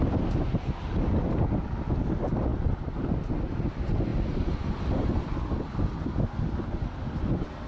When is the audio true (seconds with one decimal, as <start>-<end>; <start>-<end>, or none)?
0.0-7.7